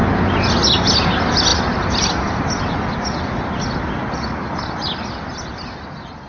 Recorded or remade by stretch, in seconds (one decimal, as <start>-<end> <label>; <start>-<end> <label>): 0.0-6.3 recorded